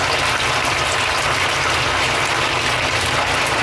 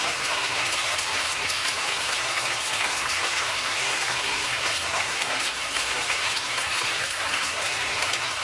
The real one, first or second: first